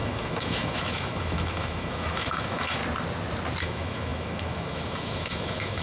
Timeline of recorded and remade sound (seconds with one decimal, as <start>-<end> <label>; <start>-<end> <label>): 0.0-2.8 remade; 2.8-3.6 recorded; 3.6-5.8 remade